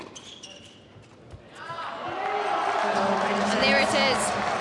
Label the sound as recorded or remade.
recorded